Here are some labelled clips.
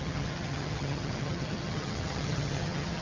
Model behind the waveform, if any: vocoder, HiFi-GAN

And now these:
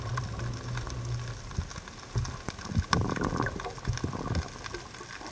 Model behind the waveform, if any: none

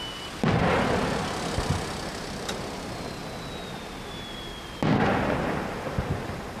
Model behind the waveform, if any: none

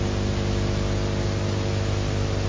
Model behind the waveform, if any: none